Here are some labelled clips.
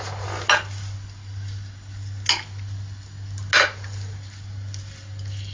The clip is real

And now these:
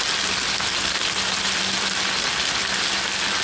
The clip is real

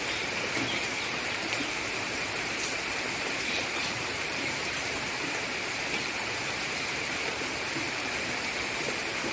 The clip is fake